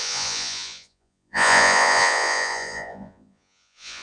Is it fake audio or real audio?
fake